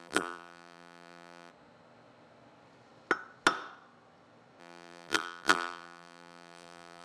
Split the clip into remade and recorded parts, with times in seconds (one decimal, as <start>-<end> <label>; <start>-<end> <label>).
0.0-1.5 remade; 1.5-4.6 recorded; 4.6-7.0 remade

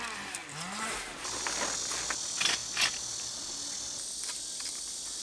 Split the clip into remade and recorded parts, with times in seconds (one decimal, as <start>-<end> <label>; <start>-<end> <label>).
0.0-5.2 recorded

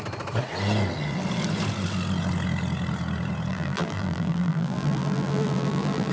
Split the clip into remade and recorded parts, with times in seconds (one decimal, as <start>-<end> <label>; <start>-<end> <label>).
0.0-3.5 recorded; 3.5-6.1 remade

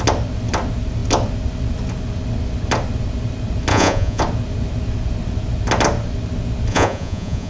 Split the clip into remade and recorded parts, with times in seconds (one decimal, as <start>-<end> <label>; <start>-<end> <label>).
0.0-3.7 recorded; 3.7-4.2 remade; 4.2-6.7 recorded; 6.7-7.5 remade

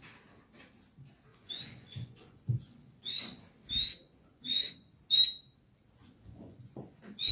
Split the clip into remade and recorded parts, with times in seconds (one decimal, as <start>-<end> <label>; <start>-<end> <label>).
0.0-1.3 recorded; 1.3-3.4 remade; 3.4-4.0 recorded; 4.0-5.0 remade; 5.0-6.0 recorded; 6.0-7.3 remade